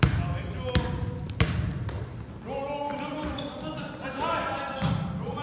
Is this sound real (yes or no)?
yes